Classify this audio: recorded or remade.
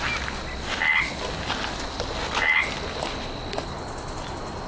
recorded